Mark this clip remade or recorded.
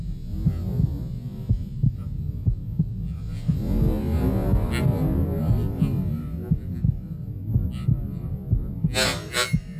recorded